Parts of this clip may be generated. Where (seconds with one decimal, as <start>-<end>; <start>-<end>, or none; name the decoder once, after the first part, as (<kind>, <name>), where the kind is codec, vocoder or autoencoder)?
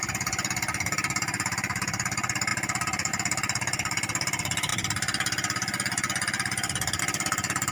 none